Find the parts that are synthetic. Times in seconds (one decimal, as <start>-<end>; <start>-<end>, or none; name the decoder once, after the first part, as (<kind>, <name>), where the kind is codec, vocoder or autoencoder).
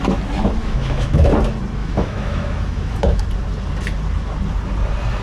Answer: 0.6-1.3 (autoencoder, DAC-VAE); 1.8-3.2